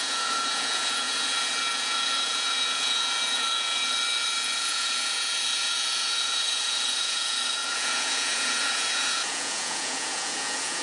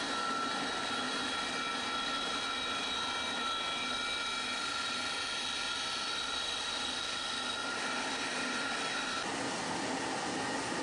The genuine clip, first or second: second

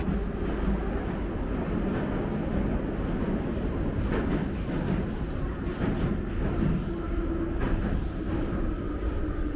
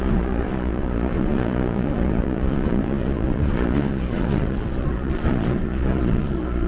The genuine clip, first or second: first